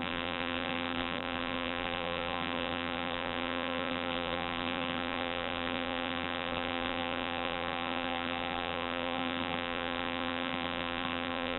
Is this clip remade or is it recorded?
remade